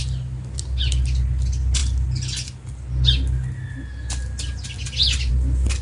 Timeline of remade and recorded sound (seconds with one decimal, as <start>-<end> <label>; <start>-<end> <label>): 0.0-5.8 recorded